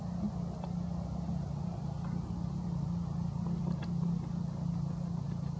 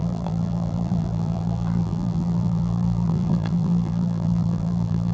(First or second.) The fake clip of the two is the second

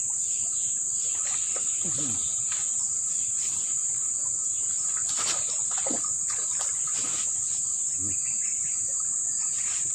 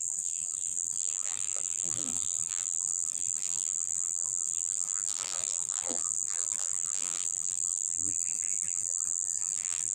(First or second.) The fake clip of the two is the second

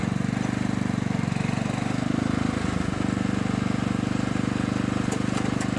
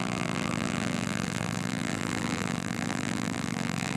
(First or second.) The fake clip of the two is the second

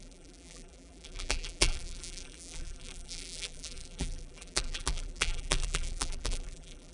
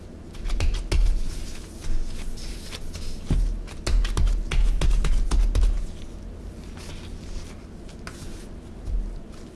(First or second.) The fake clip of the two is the first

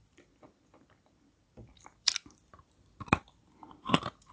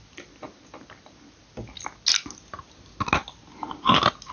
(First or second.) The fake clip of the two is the first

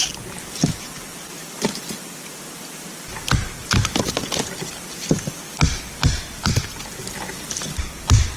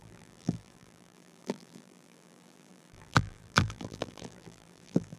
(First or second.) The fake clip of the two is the second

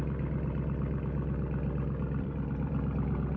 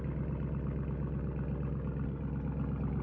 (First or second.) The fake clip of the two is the first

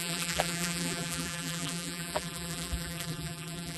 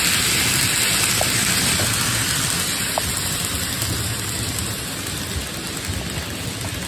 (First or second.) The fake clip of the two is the first